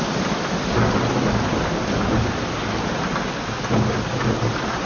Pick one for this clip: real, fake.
real